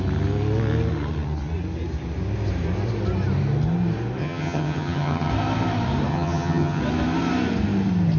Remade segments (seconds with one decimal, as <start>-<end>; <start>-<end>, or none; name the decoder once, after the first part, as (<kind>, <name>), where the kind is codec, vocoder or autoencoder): 4.2-5.3 (vocoder, HiFi-GAN); 6.1-6.8